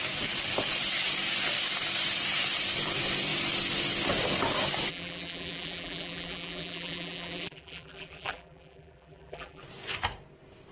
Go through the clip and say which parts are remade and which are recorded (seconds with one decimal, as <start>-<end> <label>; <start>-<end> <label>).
0.0-4.9 recorded; 4.9-9.6 remade; 9.6-10.7 recorded